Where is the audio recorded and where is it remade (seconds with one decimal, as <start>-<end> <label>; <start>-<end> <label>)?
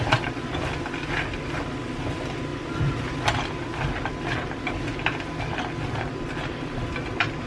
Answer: 0.0-2.5 recorded; 2.5-3.2 remade; 3.2-7.5 recorded